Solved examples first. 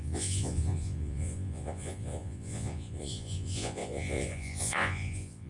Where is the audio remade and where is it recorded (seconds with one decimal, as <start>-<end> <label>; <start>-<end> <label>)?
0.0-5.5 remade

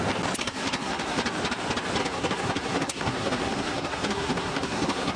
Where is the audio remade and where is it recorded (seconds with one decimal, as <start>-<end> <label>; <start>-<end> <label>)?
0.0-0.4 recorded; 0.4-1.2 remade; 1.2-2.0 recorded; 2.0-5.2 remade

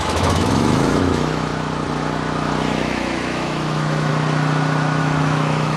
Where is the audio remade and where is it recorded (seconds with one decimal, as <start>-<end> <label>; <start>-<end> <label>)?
0.0-1.5 remade; 1.5-2.6 recorded; 2.6-4.1 remade; 4.1-5.0 recorded; 5.0-5.8 remade